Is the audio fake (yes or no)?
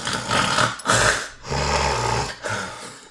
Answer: no